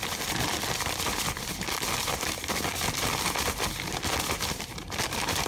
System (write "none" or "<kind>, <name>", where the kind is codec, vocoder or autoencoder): vocoder, BigVGAN v2